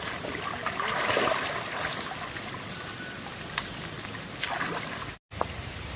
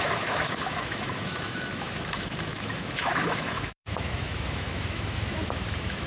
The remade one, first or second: second